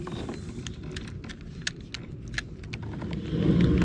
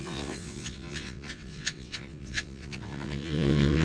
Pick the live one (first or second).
first